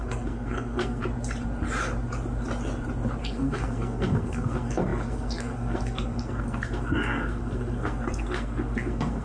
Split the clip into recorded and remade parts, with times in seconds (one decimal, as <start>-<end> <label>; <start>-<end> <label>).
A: 0.0-1.0 remade; 1.0-3.2 recorded; 3.2-9.2 remade